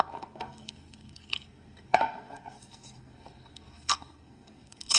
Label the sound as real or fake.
fake